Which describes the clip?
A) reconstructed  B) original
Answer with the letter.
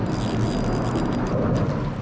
B